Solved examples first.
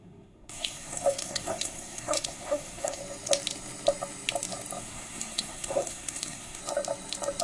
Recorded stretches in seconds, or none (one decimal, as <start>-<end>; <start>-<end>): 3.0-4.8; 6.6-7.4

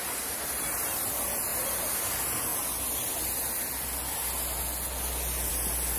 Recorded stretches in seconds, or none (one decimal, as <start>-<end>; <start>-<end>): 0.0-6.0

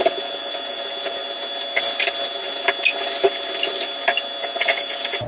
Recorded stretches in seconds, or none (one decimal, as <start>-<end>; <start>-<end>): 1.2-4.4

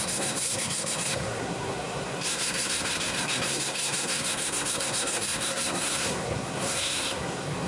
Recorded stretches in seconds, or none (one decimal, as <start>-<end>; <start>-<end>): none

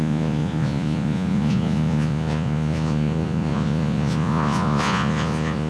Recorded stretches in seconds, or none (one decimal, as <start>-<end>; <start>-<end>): none